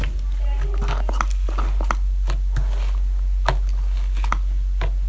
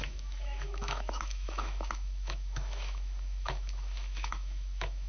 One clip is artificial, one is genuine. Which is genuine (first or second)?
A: first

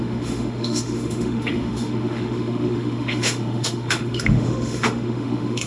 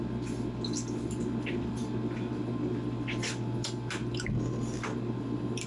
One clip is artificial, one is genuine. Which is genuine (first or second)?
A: second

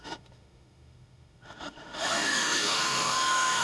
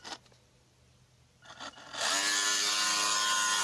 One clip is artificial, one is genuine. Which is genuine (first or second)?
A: second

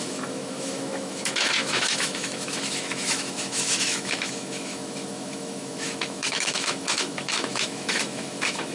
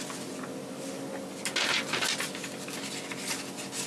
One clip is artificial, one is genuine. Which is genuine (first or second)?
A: second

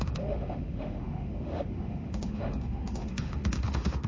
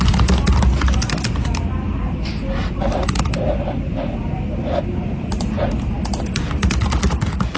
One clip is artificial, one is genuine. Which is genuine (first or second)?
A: second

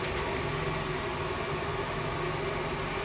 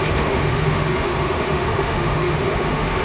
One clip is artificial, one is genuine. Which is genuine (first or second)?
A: first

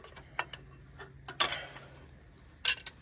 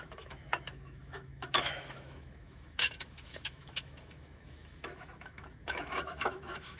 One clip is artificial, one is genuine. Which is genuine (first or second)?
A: first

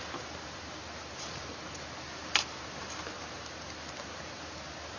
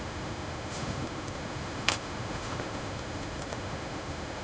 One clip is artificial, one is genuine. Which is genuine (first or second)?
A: first